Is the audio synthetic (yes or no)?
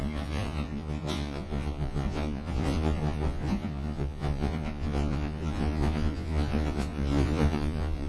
yes